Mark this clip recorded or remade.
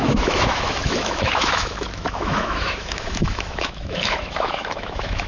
remade